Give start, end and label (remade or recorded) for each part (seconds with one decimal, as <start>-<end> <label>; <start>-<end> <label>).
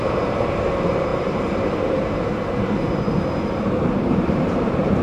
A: 0.0-5.0 remade